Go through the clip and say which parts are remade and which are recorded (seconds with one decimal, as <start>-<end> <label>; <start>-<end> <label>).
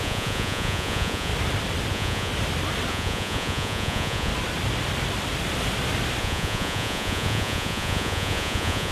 0.0-1.3 remade; 1.3-1.9 recorded; 1.9-2.3 remade; 2.3-2.9 recorded; 2.9-4.3 remade; 4.3-6.2 recorded; 6.2-8.9 remade